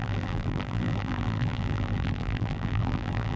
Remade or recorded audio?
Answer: remade